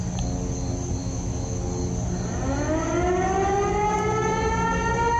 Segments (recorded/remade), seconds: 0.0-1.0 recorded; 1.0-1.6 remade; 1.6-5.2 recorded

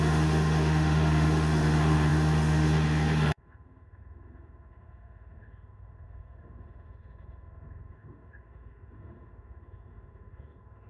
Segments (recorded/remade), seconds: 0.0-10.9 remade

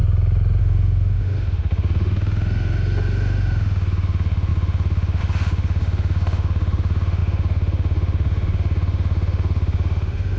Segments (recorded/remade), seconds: 0.0-0.6 recorded; 0.6-10.4 remade

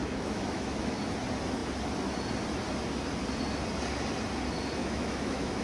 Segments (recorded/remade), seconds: 0.0-1.0 remade; 1.0-4.8 recorded; 4.8-5.6 remade